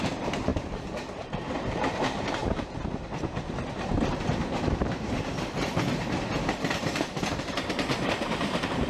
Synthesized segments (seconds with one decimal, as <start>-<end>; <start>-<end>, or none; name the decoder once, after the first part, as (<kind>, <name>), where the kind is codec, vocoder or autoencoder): 0.0-8.9 (vocoder, BigVGAN v2)